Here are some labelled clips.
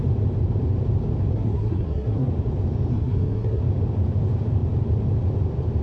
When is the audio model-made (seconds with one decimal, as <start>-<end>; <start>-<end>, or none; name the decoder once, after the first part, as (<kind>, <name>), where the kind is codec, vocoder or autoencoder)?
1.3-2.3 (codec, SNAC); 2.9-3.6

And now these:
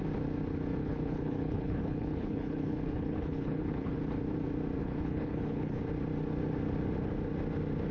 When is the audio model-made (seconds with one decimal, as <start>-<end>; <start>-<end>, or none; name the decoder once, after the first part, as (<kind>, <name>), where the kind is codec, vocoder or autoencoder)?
0.8-4.0 (codec, HILCodec); 4.8-5.8

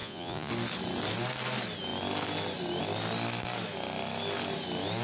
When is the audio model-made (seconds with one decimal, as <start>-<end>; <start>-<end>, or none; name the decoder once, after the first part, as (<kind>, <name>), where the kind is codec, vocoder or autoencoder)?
0.0-0.5 (vocoder, Vocos)

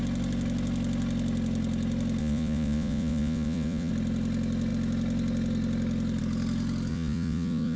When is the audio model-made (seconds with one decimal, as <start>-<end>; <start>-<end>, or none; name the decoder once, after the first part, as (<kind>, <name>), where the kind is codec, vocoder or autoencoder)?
2.2-3.9 (vocoder, Vocos); 6.9-7.8

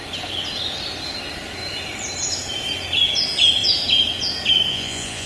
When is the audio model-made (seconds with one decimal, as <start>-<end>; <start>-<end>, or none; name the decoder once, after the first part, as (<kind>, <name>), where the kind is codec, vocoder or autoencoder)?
4.7-5.3 (vocoder, Vocos)

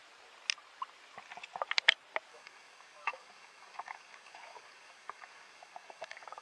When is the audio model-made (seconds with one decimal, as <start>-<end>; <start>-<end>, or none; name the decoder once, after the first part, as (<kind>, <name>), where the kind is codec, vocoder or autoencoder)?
2.3-6.4 (codec, DAC)

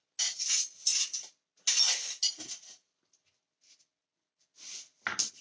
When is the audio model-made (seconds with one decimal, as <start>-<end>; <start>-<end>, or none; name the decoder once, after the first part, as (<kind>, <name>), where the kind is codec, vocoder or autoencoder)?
none

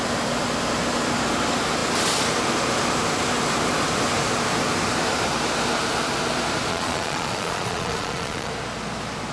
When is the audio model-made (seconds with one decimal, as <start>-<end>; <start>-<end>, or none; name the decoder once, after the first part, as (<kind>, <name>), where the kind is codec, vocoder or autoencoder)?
6.7-8.5 (vocoder, Vocos)